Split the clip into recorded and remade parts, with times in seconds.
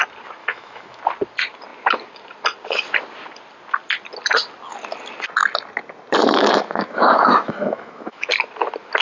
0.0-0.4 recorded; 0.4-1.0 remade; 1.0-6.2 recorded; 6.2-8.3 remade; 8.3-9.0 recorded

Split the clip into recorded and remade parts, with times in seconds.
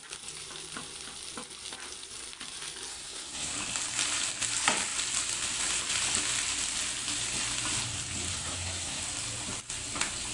0.0-2.9 recorded; 2.9-3.5 remade; 3.5-8.3 recorded; 8.3-9.0 remade; 9.0-10.3 recorded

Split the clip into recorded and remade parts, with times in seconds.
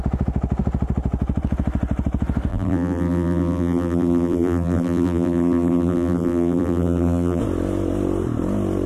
0.0-2.5 recorded; 2.5-7.4 remade; 7.4-8.9 recorded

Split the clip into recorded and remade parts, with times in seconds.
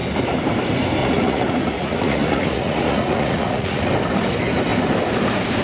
0.0-1.0 recorded; 1.0-3.9 remade; 3.9-5.6 recorded